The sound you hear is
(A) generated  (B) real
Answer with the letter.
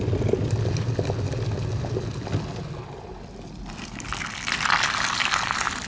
B